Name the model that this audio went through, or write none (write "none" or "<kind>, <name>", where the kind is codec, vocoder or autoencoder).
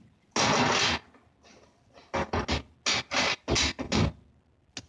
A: none